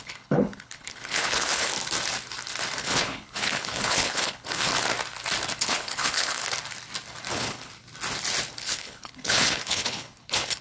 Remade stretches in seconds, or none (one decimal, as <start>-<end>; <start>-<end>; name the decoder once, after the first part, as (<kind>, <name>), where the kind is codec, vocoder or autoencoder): 0.0-1.7 (codec, HILCodec); 2.8-4.7; 5.6-6.4; 7.3-7.7; 8.5-10.6